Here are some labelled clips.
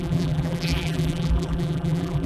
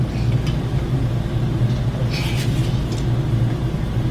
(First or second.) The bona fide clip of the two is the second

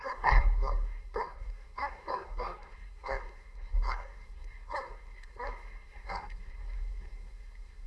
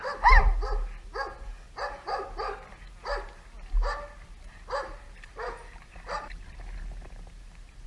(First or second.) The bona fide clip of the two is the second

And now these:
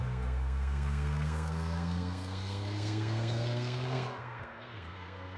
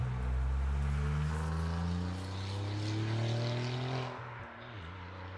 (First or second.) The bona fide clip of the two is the second